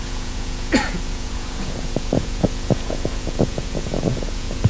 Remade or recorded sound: remade